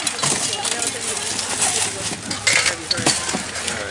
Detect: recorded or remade recorded